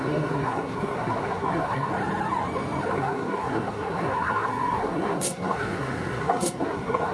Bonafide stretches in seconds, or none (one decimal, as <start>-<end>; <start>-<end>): 1.9-2.9